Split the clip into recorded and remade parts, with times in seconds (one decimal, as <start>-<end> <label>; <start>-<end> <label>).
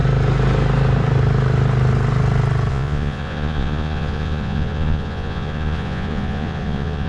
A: 0.0-2.7 recorded; 2.7-7.1 remade